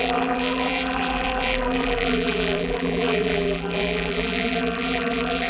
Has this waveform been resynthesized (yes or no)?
yes